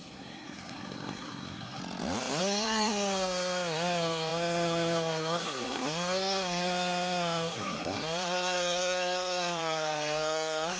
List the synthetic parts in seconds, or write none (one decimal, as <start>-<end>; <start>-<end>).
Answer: 0.0-1.8; 2.4-10.8